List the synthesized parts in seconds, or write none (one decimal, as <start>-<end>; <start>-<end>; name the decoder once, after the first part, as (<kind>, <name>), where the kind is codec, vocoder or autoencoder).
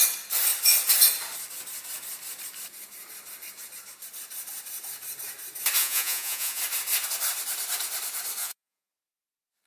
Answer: 5.8-6.6 (vocoder, Vocos); 8.4-8.9